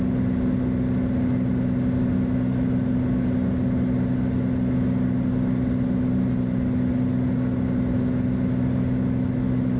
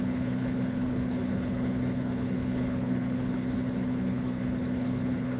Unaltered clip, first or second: first